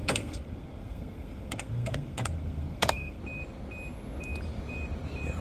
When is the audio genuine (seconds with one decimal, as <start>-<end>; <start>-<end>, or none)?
3.2-5.4

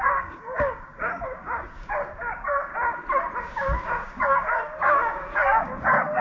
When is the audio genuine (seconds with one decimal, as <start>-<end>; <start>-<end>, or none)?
2.7-3.4